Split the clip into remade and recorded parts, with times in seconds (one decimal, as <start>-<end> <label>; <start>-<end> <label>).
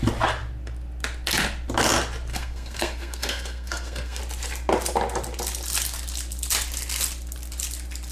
0.0-2.3 recorded; 2.3-4.2 remade; 4.2-8.1 recorded